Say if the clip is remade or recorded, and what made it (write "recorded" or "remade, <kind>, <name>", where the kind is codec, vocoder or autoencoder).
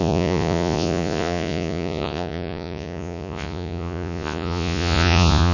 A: remade, vocoder, Vocos